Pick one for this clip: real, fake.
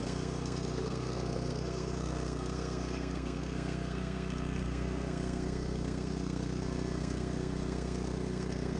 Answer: fake